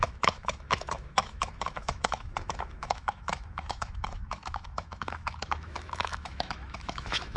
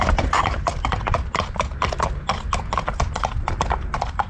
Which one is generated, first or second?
first